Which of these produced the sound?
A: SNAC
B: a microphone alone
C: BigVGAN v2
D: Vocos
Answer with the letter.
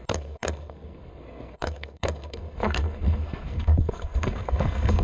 A